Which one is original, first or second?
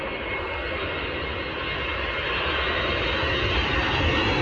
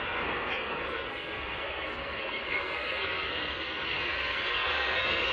first